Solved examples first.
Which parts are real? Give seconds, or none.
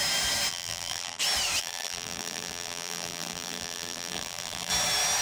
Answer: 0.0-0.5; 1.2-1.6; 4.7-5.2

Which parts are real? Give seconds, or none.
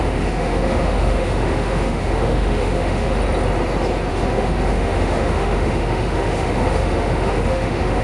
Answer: 3.2-4.1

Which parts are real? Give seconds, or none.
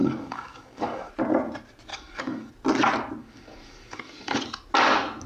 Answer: 1.1-1.9; 2.5-3.2; 4.4-5.3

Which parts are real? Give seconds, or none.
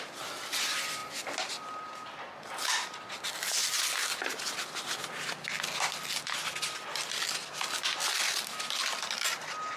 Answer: 0.0-1.0; 1.5-9.8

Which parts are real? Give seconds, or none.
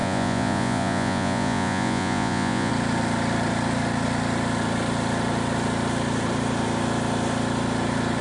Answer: 2.7-8.2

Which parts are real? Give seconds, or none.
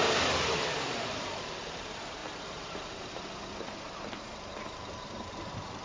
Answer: none